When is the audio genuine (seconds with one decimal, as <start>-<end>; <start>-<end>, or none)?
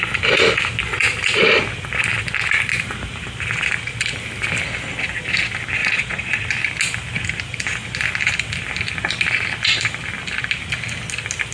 0.0-5.8; 6.5-11.5